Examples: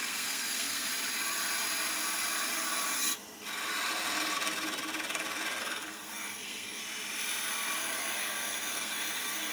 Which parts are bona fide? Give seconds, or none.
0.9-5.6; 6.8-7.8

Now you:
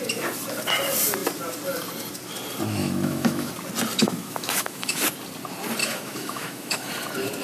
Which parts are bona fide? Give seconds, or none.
0.0-2.8; 3.5-4.0; 5.0-5.8; 6.9-7.4

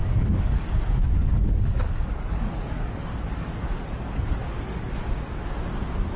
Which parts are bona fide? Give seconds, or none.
0.6-1.2; 4.9-6.2

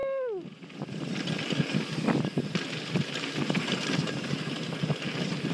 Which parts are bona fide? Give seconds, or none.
0.0-5.5

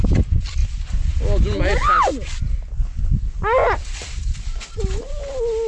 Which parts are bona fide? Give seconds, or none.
0.0-5.7

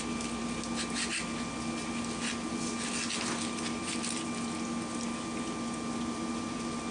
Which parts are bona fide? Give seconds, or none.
0.0-6.9